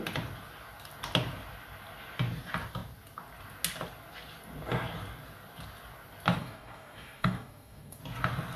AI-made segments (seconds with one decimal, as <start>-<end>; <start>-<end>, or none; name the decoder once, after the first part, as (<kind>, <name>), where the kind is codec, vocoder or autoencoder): 6.4-8.0 (codec, DAC)